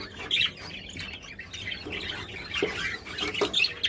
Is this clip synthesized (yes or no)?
no